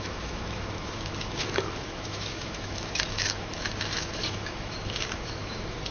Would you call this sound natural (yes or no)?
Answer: no